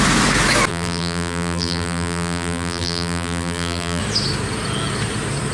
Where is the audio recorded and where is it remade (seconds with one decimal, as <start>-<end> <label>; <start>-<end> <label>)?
0.0-0.7 recorded; 0.7-4.0 remade; 4.0-5.5 recorded